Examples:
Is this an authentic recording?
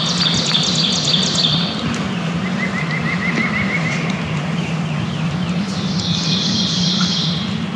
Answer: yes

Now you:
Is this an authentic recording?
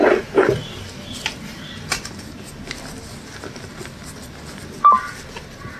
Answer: no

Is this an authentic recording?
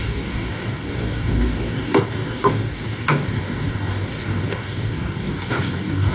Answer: no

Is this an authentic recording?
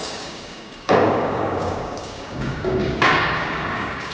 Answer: no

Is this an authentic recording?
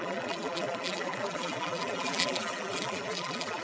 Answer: no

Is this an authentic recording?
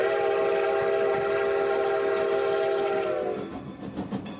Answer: yes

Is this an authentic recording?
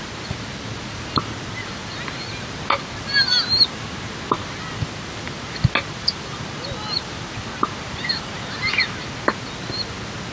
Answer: yes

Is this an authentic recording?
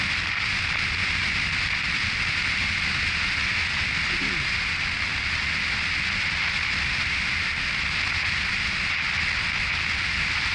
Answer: yes